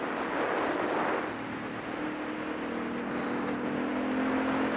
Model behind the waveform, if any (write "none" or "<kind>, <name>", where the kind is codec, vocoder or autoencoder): none